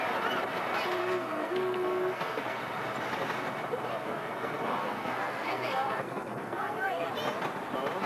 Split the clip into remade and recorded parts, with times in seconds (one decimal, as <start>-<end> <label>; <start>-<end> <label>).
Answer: 0.0-1.0 recorded; 1.0-2.6 remade; 2.6-3.9 recorded; 3.9-7.1 remade; 7.1-8.1 recorded